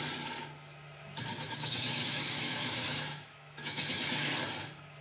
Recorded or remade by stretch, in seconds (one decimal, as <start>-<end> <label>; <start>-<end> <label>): 0.0-1.3 recorded; 1.3-4.3 remade; 4.3-5.0 recorded